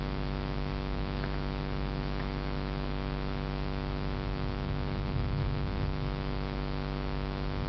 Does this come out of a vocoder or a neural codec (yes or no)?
yes